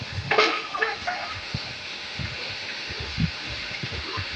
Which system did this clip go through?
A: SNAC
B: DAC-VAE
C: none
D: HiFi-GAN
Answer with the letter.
B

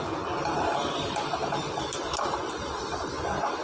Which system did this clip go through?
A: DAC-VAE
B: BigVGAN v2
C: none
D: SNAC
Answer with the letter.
C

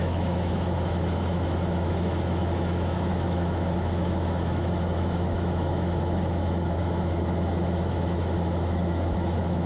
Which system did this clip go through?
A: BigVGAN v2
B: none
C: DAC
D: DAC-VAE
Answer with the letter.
D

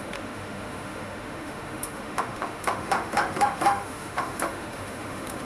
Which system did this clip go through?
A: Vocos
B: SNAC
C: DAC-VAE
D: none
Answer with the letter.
C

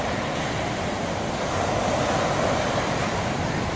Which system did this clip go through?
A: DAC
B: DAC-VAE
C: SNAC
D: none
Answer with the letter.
D